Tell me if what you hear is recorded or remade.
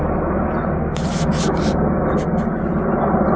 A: recorded